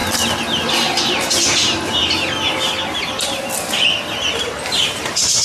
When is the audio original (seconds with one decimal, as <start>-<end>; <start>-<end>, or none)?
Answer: 0.0-0.7; 2.0-4.4